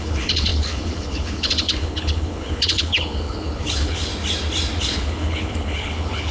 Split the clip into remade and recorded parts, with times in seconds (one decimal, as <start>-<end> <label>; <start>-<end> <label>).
0.0-4.1 remade; 4.1-4.8 recorded; 4.8-6.3 remade

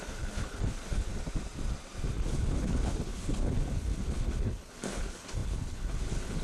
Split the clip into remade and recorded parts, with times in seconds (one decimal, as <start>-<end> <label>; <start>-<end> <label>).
0.0-1.1 remade; 1.1-2.1 recorded; 2.1-6.4 remade

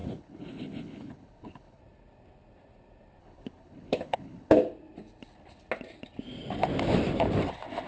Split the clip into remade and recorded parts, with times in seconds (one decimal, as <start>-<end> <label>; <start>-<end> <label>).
0.0-1.8 remade; 1.8-3.2 recorded; 3.2-4.6 remade; 4.6-7.9 recorded

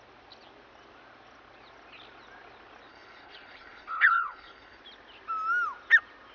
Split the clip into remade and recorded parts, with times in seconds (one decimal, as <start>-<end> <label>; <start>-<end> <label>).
0.0-2.9 recorded; 2.9-4.8 remade; 4.8-6.3 recorded

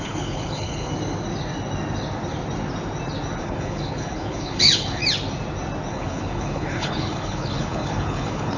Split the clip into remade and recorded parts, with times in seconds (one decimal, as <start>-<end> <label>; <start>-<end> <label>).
0.0-0.9 remade; 0.9-3.4 recorded; 3.4-5.0 remade; 5.0-5.9 recorded; 5.9-8.6 remade

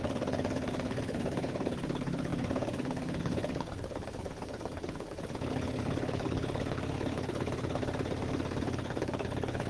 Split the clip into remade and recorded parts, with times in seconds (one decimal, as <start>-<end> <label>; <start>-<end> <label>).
0.0-7.8 remade; 7.8-8.6 recorded; 8.6-9.7 remade